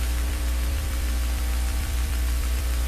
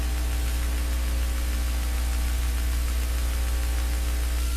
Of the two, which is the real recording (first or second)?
second